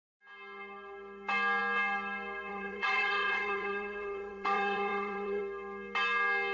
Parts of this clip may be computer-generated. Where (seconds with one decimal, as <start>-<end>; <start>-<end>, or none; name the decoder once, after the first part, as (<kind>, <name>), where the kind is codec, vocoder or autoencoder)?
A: 2.5-5.4 (vocoder, WaveNeXt)